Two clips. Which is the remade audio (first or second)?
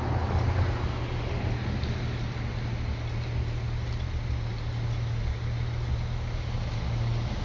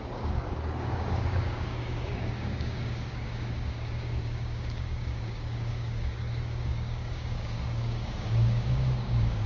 second